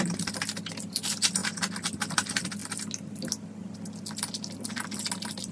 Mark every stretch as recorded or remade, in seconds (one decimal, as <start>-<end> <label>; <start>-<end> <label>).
0.0-5.5 recorded